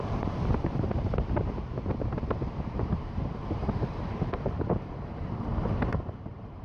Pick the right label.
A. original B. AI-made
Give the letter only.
B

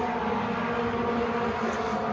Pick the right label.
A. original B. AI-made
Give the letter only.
A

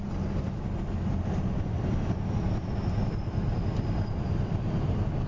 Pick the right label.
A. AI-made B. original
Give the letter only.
B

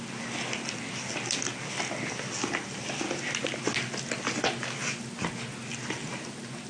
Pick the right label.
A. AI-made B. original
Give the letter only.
B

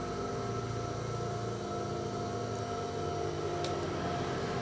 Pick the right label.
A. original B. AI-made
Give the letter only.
A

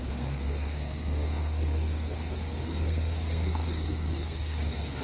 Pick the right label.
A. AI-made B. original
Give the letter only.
A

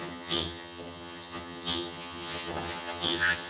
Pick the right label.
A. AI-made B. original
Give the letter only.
A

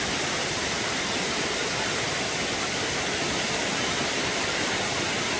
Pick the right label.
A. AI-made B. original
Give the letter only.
A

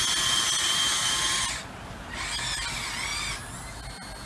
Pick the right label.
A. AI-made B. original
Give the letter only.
B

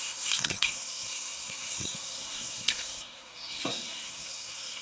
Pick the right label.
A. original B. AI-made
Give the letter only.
B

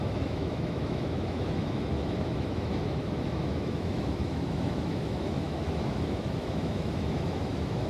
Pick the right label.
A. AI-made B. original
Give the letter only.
A